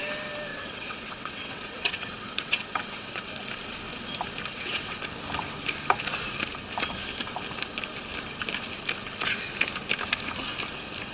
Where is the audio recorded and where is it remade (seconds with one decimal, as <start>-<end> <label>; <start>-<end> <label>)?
0.0-0.5 recorded; 0.5-3.3 remade; 3.3-4.5 recorded; 4.5-5.0 remade; 5.0-11.1 recorded